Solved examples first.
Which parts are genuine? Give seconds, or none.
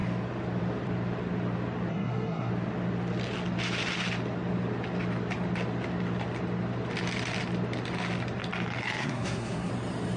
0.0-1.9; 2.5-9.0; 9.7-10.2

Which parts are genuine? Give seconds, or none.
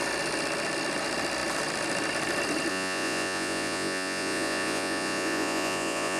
0.0-2.7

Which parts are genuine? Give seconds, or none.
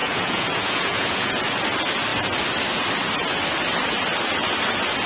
1.4-5.1